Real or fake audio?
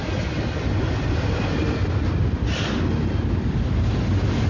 real